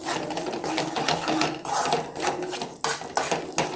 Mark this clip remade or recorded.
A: recorded